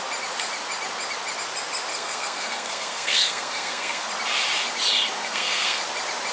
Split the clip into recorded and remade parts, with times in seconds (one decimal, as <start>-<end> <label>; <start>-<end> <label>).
0.0-1.9 recorded; 1.9-4.1 remade; 4.1-5.2 recorded; 5.2-5.8 remade; 5.8-6.3 recorded